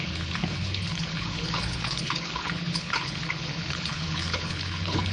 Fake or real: fake